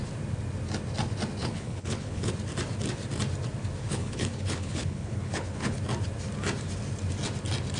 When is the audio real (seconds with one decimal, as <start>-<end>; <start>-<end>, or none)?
0.0-1.4; 2.3-3.8; 5.8-7.8